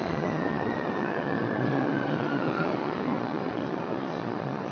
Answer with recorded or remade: remade